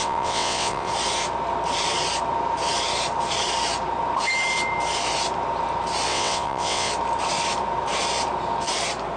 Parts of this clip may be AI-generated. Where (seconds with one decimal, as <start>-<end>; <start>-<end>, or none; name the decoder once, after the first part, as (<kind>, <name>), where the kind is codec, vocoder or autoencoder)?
0.0-0.9 (vocoder, WaveNeXt); 6.1-6.9